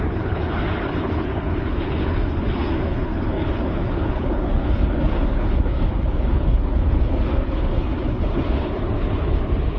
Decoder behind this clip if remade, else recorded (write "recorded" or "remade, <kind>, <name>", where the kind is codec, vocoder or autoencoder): remade, codec, HILCodec